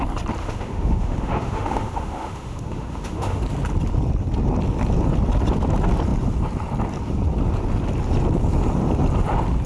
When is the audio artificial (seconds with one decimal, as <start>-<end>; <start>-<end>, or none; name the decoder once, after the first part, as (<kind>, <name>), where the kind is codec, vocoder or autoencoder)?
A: 0.4-3.4 (autoencoder, DAC-VAE)